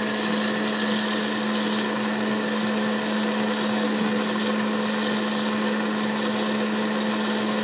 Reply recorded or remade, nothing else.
recorded